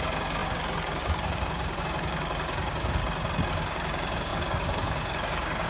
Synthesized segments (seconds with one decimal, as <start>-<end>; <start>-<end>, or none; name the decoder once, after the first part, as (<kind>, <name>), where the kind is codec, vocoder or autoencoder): 0.0-3.0 (codec, DAC); 3.5-5.7